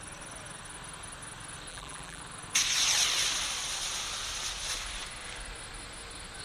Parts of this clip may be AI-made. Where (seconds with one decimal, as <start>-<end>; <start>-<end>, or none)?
1.7-2.2